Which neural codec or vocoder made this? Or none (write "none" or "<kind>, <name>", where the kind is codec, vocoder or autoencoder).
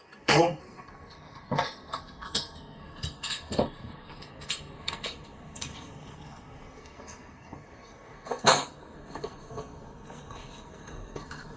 codec, SNAC